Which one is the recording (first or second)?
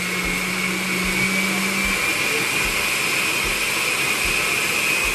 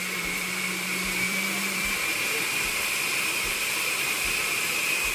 first